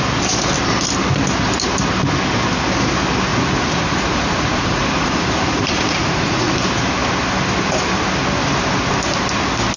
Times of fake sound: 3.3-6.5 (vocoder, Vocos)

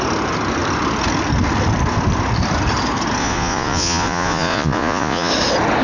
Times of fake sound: 3.2-5.3 (vocoder, Vocos)

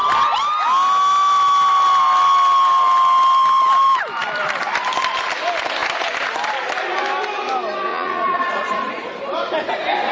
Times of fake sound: 7.9-9.1 (vocoder, Vocos)

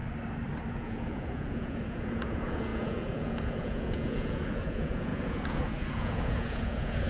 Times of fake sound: 0.7-7.1 (vocoder, Vocos)

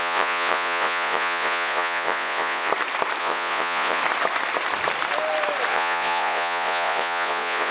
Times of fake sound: 0.0-2.7 (vocoder, Vocos); 3.2-4.0; 5.7-7.7

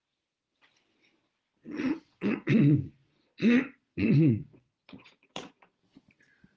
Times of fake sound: 1.6-2.6 (vocoder, Vocos); 3.0-5.8

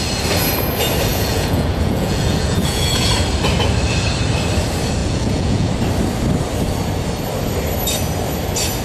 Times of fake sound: 1.1-3.1 (vocoder, Vocos); 5.0-5.7